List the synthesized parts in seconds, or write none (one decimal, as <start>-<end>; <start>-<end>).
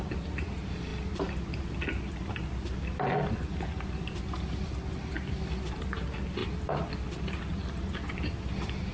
none